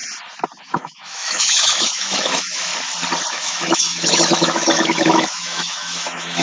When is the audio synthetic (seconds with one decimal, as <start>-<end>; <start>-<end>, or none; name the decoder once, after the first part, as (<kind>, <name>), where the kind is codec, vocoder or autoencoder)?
0.6-2.7 (autoencoder, DAC-VAE); 3.3-6.4